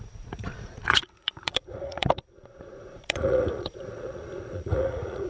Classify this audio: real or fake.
fake